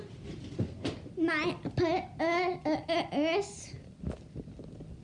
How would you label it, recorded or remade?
recorded